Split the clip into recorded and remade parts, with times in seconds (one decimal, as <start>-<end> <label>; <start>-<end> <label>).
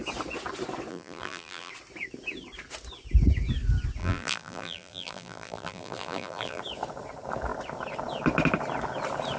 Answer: 0.0-0.9 recorded; 0.9-1.7 remade; 1.7-4.0 recorded; 4.0-6.6 remade; 6.6-9.4 recorded